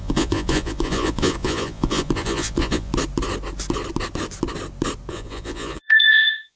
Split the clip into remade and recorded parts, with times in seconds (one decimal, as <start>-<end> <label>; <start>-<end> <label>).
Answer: 0.0-2.9 remade; 2.9-5.1 recorded; 5.1-6.6 remade